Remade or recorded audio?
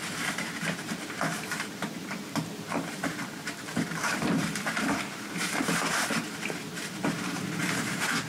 remade